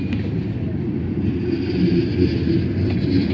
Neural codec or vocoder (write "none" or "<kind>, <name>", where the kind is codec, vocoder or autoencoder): none